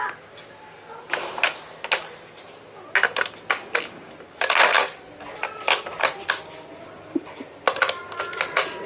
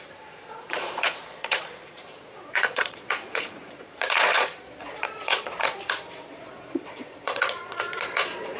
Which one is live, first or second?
first